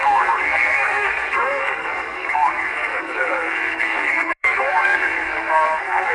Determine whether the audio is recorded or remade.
remade